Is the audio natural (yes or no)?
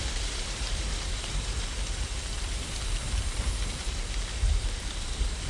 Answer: no